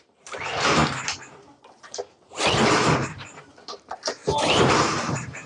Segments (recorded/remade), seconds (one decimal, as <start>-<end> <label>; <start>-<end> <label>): 0.0-0.8 remade; 0.8-3.1 recorded; 3.1-4.2 remade; 4.2-4.8 recorded; 4.8-5.5 remade